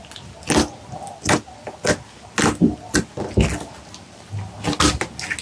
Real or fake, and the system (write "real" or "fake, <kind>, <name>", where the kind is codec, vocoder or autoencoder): real